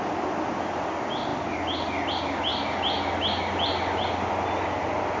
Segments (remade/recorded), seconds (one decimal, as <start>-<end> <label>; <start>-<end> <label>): 0.0-5.2 recorded